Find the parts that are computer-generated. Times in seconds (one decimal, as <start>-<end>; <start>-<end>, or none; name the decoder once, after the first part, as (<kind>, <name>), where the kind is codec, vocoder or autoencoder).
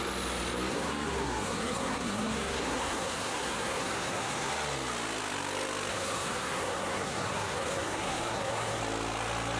0.7-4.5 (codec, SNAC); 5.9-8.8